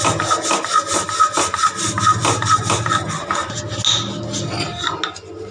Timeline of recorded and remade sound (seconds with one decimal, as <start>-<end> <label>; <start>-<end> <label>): 0.0-5.5 recorded